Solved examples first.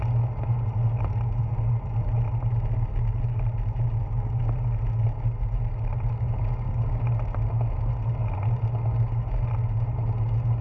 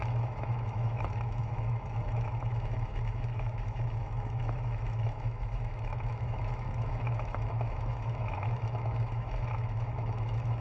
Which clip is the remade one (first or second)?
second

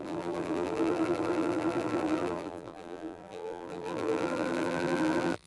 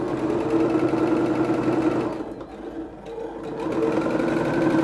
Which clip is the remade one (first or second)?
first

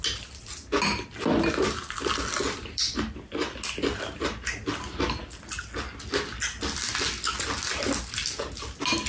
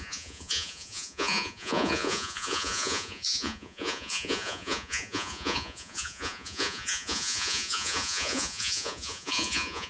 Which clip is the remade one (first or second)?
second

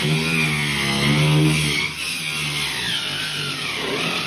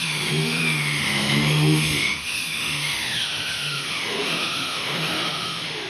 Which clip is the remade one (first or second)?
second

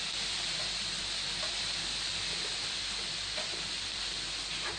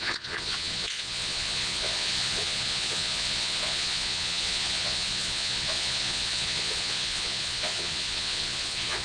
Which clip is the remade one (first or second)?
second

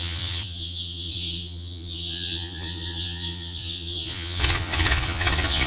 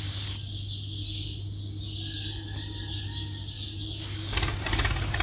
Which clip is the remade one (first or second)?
first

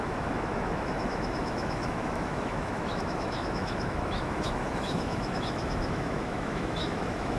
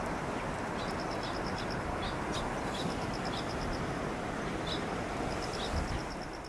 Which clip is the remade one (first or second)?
first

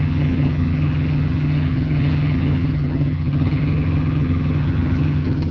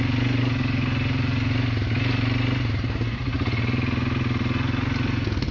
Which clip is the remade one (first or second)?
first